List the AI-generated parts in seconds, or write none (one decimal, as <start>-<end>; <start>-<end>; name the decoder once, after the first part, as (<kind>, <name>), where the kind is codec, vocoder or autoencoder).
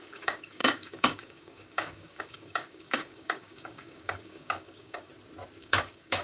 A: 0.0-5.1 (codec, DAC); 5.6-6.2